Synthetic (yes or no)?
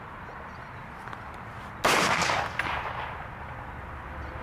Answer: no